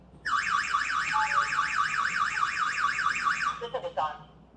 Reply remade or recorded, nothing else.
recorded